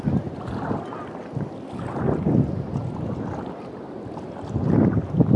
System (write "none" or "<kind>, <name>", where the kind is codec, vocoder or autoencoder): none